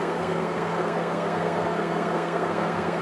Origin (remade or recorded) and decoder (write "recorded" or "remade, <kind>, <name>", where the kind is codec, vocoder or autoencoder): remade, codec, SNAC